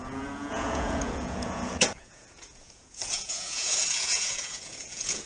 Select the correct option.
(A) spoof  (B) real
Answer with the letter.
A